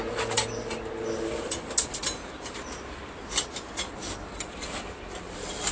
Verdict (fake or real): real